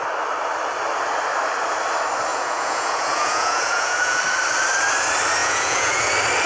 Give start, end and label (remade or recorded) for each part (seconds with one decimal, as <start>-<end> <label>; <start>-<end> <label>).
0.0-2.3 recorded; 2.3-4.2 remade; 4.2-5.4 recorded; 5.4-6.1 remade; 6.1-6.5 recorded